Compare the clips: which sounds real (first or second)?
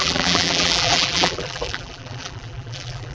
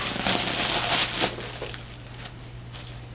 second